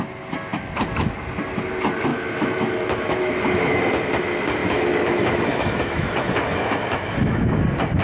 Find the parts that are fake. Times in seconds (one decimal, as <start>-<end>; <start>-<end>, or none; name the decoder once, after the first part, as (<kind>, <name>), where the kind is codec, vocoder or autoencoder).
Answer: 2.1-3.3 (autoencoder, DAC-VAE); 4.6-7.6